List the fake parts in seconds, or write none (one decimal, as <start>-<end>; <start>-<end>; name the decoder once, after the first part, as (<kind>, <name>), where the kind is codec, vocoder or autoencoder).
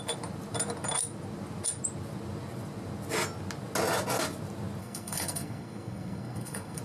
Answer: 4.8-6.8 (codec, SNAC)